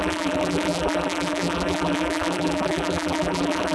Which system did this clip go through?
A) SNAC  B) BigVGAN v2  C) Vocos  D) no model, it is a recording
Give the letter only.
B